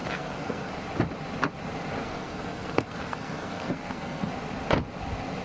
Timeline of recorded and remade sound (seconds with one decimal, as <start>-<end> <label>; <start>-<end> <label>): 0.0-0.7 remade; 0.7-2.0 recorded; 2.0-4.3 remade; 4.3-5.4 recorded